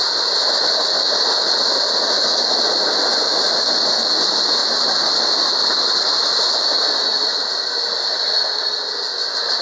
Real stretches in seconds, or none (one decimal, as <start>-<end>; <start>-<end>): 0.0-9.6